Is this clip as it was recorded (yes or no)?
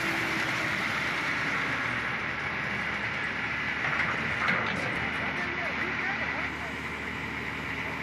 yes